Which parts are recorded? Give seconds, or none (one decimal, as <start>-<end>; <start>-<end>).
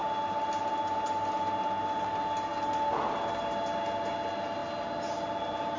0.0-5.8